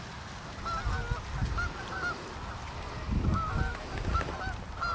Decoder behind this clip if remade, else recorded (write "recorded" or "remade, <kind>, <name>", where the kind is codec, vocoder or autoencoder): recorded